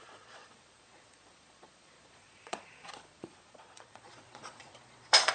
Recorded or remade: remade